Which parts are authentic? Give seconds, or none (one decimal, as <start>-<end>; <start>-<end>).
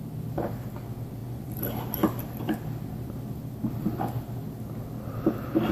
0.0-5.7